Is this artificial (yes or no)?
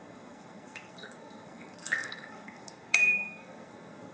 yes